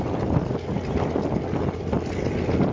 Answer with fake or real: real